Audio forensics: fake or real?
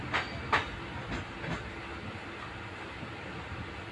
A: real